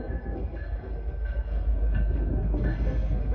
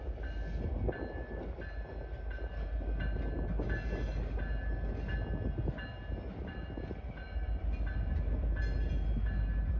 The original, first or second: second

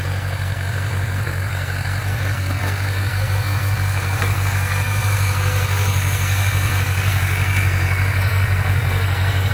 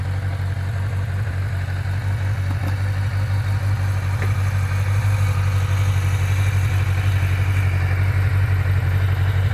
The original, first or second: second